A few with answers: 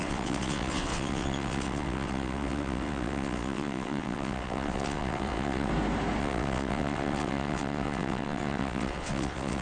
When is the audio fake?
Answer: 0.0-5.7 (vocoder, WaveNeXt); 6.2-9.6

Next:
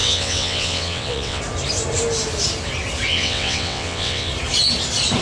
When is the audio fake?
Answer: 0.0-1.4 (vocoder, WaveNeXt); 3.1-4.3